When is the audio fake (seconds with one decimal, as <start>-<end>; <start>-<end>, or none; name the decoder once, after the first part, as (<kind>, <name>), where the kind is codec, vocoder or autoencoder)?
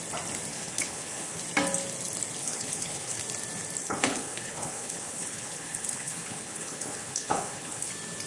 0.5-1.4 (codec, HILCodec); 2.4-3.2; 3.8-7.9